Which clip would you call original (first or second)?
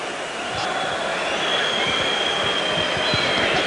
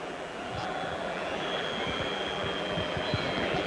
first